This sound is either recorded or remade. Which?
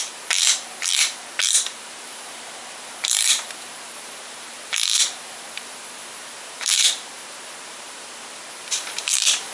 remade